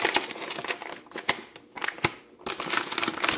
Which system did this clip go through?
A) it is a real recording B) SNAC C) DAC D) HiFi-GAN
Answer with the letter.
A